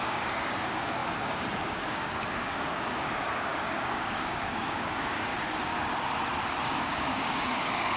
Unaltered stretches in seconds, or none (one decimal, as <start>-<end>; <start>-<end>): 5.3-6.8